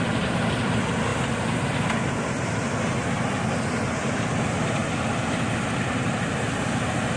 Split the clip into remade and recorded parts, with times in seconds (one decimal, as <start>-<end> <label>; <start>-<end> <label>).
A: 0.0-7.2 recorded